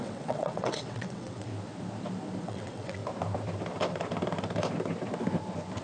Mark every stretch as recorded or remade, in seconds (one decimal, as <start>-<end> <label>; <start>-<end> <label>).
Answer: 0.0-1.5 remade; 1.5-2.4 recorded; 2.4-3.0 remade; 3.0-5.8 recorded